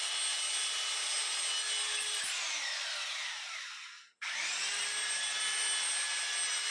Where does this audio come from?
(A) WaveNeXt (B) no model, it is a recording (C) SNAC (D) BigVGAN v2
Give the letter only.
B